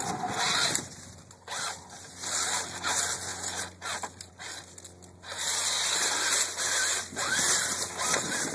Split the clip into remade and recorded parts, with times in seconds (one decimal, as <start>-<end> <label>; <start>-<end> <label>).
0.0-8.5 recorded